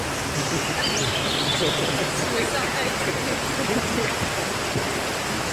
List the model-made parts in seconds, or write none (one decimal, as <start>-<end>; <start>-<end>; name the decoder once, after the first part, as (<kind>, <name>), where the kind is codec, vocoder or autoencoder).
0.0-1.0 (vocoder, BigVGAN v2); 1.7-2.8; 3.5-5.5